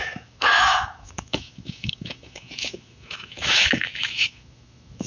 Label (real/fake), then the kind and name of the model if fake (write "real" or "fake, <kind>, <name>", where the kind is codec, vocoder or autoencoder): fake, autoencoder, DAC-VAE